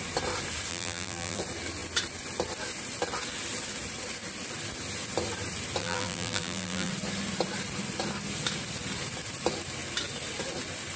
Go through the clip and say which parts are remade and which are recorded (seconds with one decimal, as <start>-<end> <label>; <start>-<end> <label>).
0.0-0.7 recorded; 0.7-1.4 remade; 1.4-5.8 recorded; 5.8-6.9 remade; 6.9-11.0 recorded